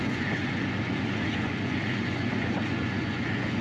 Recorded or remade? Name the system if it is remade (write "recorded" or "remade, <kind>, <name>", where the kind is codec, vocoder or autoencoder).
remade, vocoder, Vocos